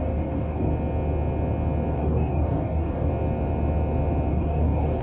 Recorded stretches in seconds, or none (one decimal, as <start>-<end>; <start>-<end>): 0.7-1.9; 3.1-4.3